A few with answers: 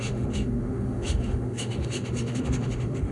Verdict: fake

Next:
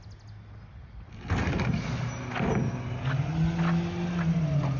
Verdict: real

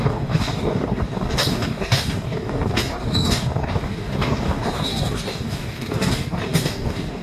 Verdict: fake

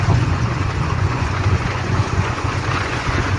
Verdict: fake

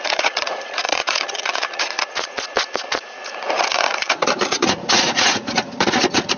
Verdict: fake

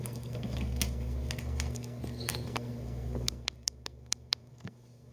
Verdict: fake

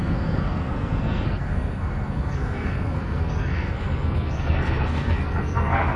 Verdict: fake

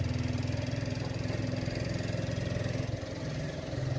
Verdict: real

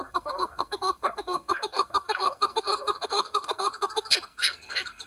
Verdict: fake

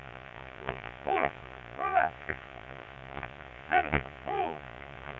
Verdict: fake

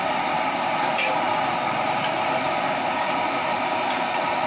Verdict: real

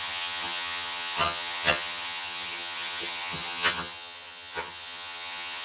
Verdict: fake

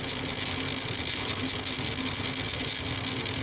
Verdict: real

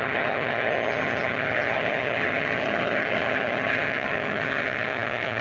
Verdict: fake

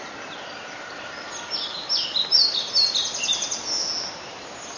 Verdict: real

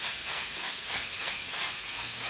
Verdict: fake